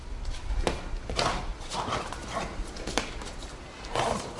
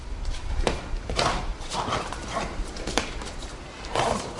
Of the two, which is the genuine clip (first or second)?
first